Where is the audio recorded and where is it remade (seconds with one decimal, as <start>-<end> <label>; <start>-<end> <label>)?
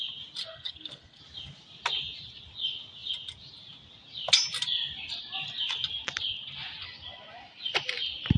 0.0-0.4 recorded; 0.4-1.2 remade; 1.2-8.4 recorded